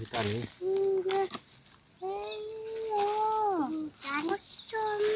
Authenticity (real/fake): real